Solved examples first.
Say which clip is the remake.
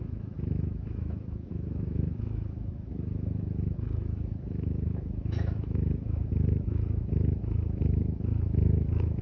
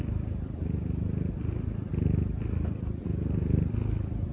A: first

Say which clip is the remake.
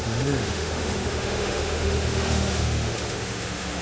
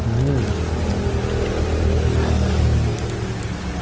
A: first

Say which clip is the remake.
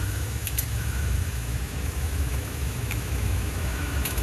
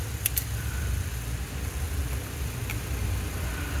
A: first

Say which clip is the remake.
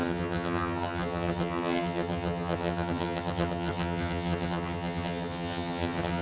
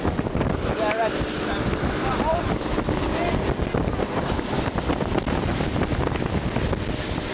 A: first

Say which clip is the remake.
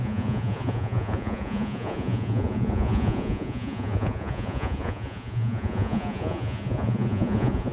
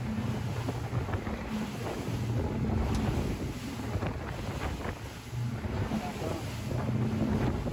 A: first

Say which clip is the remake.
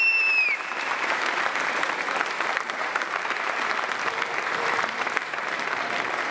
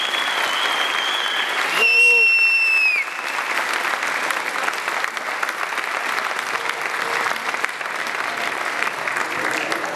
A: first